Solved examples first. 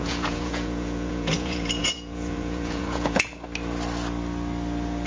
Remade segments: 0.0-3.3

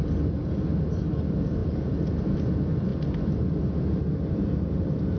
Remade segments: none

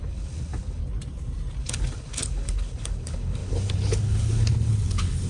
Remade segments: 0.0-0.8; 1.6-5.3

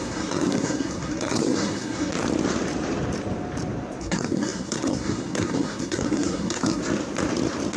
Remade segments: 0.0-2.1; 4.0-6.8

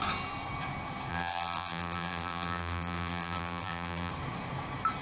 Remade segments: 1.1-4.1

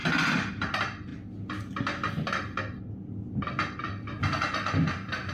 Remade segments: none

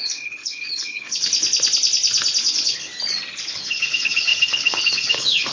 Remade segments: 0.0-1.3; 2.4-2.9; 3.5-5.5

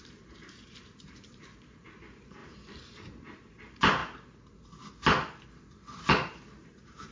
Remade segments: 0.0-4.0; 6.0-7.1